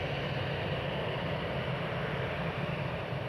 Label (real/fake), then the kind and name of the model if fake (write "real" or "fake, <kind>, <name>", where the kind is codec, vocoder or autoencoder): real